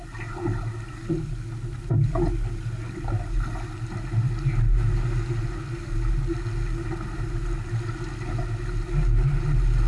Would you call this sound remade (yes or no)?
no